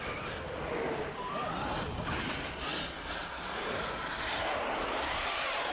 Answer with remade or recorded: recorded